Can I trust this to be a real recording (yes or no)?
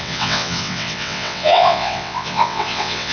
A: no